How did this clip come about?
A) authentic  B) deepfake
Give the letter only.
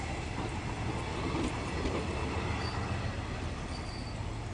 A